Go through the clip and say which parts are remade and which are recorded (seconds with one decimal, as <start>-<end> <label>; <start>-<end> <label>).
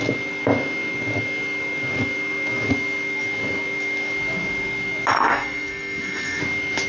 0.0-5.1 recorded; 5.1-6.4 remade; 6.4-6.9 recorded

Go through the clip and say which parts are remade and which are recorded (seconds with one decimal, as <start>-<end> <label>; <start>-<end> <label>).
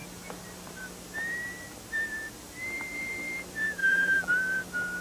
0.0-3.8 recorded; 3.8-4.3 remade; 4.3-5.0 recorded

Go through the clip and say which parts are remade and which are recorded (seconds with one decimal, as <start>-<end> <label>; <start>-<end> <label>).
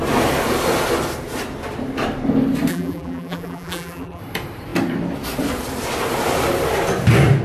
0.0-2.7 recorded; 2.7-4.2 remade; 4.2-7.4 recorded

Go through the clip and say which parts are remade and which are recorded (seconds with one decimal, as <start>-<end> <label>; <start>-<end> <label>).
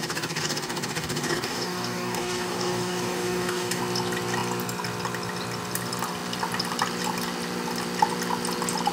0.0-3.8 remade; 3.8-8.9 recorded